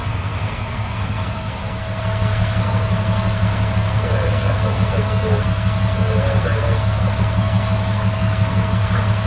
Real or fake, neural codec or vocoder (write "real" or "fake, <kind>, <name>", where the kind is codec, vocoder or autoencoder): fake, codec, SNAC